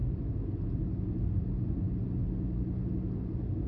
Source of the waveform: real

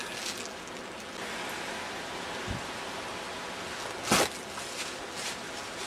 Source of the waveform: real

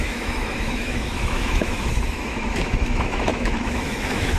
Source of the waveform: fake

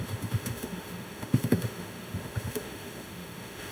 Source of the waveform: fake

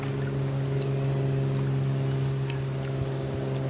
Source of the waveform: real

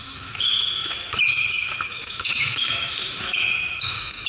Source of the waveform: fake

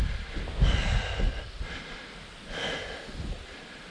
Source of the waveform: real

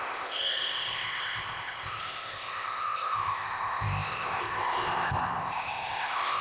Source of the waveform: fake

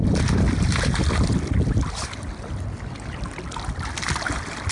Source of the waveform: real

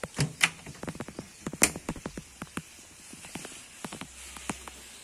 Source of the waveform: real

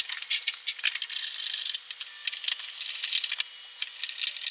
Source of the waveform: real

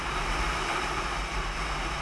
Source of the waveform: real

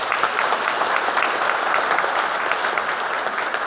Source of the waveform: real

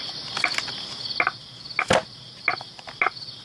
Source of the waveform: real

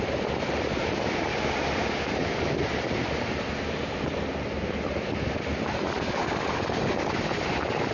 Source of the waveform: real